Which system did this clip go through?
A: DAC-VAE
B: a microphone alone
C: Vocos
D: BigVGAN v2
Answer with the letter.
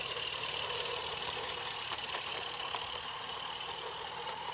D